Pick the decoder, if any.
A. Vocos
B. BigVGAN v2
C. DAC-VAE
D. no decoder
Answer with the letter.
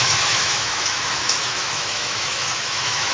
C